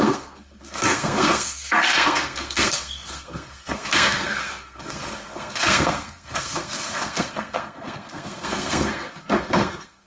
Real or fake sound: fake